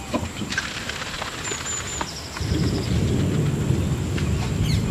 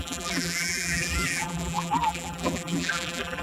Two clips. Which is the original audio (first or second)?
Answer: first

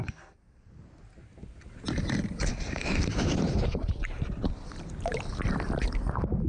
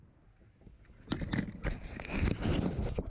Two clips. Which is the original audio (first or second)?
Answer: second